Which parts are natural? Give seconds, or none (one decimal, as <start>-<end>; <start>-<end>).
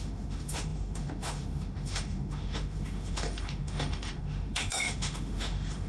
none